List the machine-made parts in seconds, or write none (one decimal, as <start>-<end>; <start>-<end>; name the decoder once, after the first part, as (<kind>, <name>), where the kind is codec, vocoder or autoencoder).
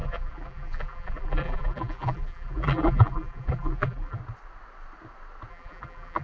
0.0-4.2 (vocoder, BigVGAN v2); 5.5-6.2